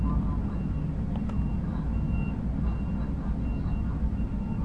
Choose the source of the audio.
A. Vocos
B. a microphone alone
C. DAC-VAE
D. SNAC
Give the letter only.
B